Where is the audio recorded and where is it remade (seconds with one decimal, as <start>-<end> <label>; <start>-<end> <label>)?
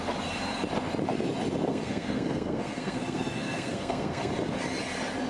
0.0-1.7 recorded; 1.7-4.3 remade; 4.3-5.3 recorded